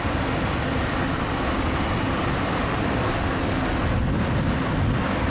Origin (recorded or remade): recorded